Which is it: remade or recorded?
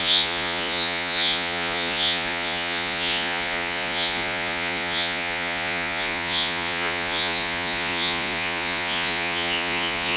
remade